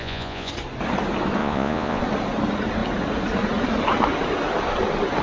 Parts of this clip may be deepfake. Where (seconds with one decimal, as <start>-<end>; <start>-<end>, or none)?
0.0-0.5; 1.4-2.0